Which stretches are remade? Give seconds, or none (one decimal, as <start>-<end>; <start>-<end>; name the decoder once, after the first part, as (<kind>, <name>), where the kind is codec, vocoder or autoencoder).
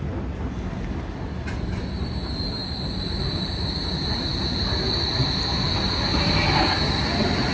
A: 2.6-3.2 (vocoder, BigVGAN v2)